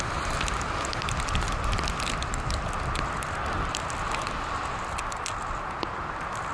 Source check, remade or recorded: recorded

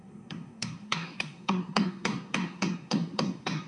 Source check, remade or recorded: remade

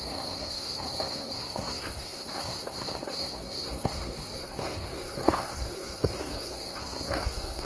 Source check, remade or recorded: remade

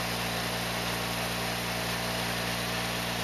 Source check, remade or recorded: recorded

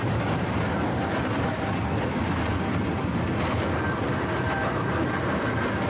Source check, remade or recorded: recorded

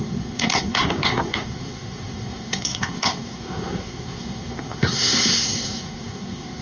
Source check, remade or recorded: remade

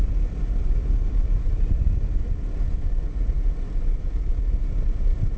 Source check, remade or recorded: recorded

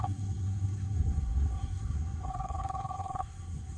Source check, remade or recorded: remade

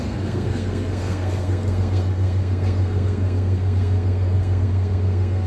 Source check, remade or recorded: remade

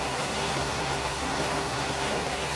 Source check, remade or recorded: remade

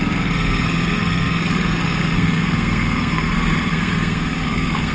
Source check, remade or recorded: remade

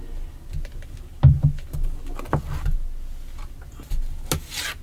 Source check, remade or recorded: recorded